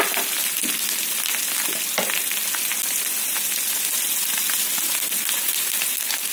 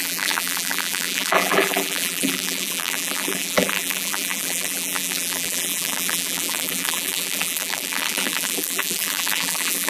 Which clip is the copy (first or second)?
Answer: second